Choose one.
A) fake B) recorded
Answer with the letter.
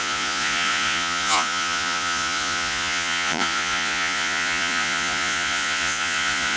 A